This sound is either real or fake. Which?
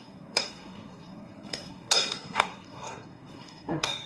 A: fake